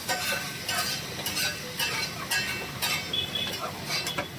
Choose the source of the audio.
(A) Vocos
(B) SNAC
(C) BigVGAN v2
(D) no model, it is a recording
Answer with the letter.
D